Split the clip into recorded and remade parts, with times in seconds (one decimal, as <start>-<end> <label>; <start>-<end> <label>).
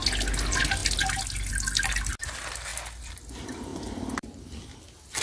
0.0-5.2 recorded